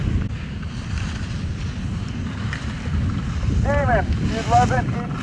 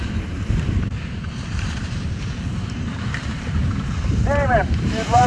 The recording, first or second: first